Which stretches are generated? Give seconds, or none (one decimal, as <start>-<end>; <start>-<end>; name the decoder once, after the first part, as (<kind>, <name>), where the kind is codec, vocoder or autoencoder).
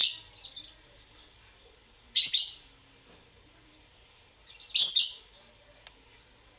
0.0-2.2 (vocoder, BigVGAN v2)